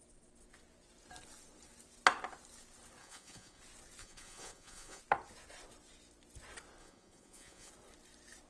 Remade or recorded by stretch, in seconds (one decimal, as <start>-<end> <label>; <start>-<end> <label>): 0.0-3.0 recorded; 3.0-3.6 remade; 3.6-4.0 recorded; 4.0-5.0 remade; 5.0-6.8 recorded; 6.8-7.7 remade; 7.7-8.5 recorded